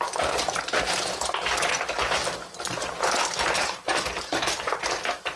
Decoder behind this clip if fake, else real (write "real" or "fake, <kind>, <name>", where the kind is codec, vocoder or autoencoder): fake, vocoder, BigVGAN v2